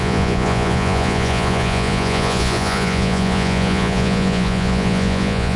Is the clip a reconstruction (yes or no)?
yes